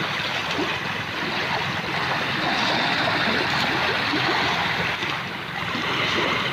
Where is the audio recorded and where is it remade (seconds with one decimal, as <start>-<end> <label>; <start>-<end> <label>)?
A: 0.0-6.5 recorded